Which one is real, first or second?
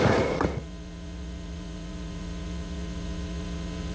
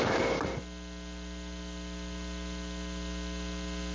second